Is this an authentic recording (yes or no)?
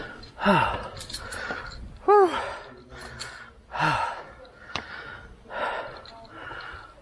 yes